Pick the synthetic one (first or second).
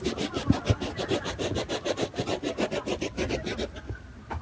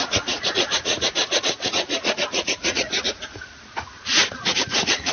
second